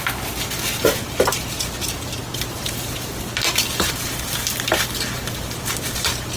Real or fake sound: real